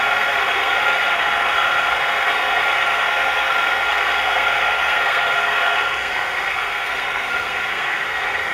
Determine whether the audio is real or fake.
fake